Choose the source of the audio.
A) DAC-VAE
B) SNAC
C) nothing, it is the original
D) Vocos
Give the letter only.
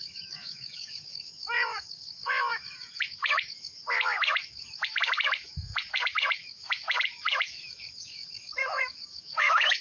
A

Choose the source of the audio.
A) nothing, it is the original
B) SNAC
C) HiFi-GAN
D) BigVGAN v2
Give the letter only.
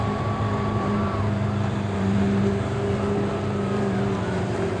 D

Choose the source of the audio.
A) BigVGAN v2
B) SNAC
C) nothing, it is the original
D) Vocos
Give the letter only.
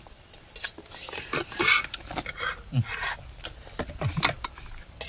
C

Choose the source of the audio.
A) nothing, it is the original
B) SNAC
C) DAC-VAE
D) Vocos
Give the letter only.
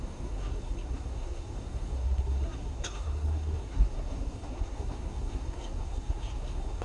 B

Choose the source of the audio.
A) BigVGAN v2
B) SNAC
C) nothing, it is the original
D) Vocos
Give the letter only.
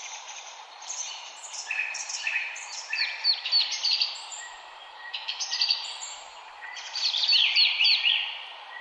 A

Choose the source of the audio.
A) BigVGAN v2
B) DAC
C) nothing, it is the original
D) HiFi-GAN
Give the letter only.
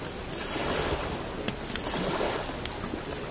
C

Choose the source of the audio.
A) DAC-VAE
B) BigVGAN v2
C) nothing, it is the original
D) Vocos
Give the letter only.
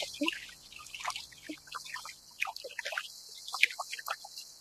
C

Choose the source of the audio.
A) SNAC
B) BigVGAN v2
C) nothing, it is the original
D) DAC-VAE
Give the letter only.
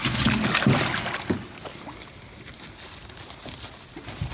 C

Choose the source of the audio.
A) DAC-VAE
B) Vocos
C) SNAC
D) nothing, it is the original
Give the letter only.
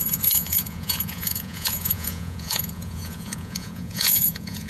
B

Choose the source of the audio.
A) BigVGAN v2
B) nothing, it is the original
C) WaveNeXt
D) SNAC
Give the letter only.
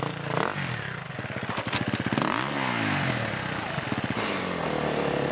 B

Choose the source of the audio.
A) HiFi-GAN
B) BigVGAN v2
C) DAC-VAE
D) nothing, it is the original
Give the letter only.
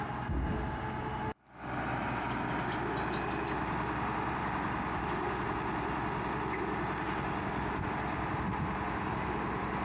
D